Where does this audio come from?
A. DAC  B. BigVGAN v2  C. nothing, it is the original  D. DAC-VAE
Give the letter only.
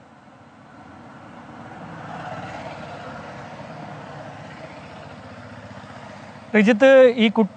C